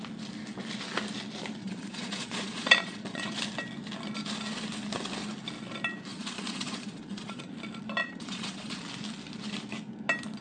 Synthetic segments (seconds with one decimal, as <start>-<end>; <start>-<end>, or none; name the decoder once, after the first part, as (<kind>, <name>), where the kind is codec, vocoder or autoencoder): 1.6-3.3 (vocoder, Vocos); 6.1-7.5; 8.0-8.8